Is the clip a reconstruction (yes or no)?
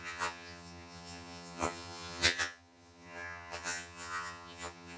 yes